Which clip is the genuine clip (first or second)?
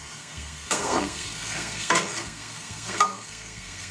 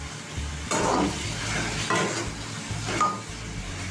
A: second